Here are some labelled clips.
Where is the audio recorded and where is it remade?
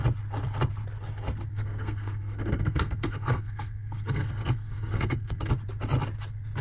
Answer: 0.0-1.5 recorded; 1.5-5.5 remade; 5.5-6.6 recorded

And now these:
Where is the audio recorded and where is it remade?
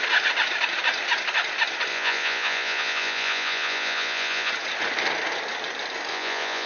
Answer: 0.0-1.9 recorded; 1.9-4.5 remade; 4.5-6.1 recorded; 6.1-6.7 remade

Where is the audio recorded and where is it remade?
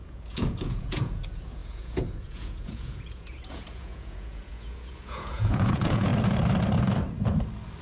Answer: 0.0-6.1 remade; 6.1-7.8 recorded